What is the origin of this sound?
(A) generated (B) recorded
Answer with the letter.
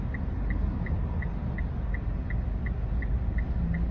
B